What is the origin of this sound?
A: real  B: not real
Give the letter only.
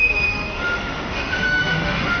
B